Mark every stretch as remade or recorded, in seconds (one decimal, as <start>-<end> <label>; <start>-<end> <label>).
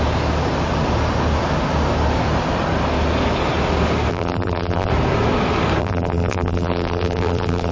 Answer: 0.0-4.1 recorded; 4.1-4.9 remade; 4.9-5.8 recorded; 5.8-7.7 remade